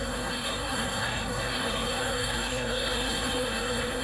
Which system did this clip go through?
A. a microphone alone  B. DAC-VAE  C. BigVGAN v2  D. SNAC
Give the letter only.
D